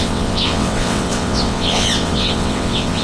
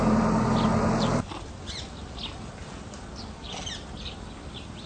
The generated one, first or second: first